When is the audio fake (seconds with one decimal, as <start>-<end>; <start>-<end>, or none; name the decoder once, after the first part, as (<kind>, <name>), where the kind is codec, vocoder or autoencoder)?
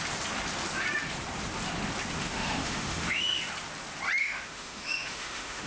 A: 2.2-3.4 (autoencoder, DAC-VAE); 4.2-5.7